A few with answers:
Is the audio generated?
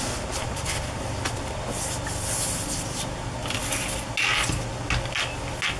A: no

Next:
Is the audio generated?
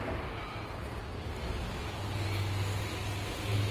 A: no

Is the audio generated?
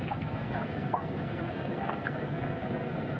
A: yes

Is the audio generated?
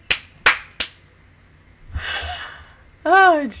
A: no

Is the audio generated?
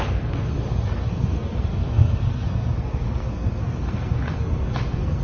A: yes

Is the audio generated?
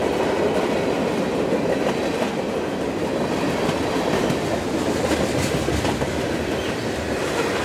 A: no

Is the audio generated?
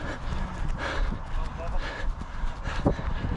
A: no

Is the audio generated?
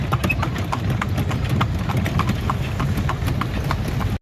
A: no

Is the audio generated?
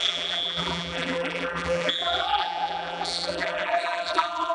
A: yes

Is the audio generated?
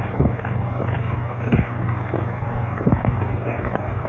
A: yes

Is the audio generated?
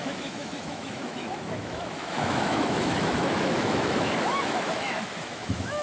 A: yes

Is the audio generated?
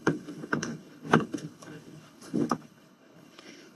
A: yes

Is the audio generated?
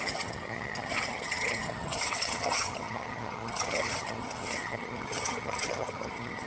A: yes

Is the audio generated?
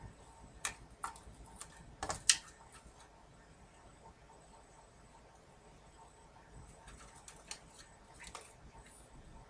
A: no